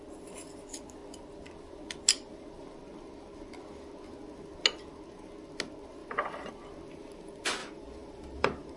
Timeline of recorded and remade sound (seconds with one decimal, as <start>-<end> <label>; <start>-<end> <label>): 0.0-6.0 recorded; 6.0-6.5 remade; 6.5-7.6 recorded; 7.6-8.8 remade